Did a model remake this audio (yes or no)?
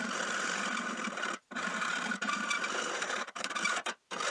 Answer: yes